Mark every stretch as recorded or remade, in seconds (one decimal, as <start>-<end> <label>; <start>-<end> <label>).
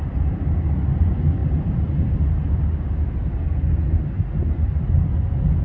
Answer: 0.0-5.6 recorded